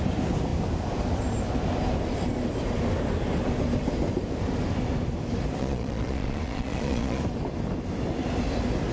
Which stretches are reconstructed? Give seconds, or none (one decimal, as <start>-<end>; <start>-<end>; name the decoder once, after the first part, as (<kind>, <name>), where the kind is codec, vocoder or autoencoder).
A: 5.6-7.2 (vocoder, Vocos)